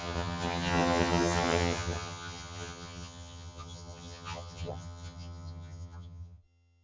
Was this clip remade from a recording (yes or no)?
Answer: yes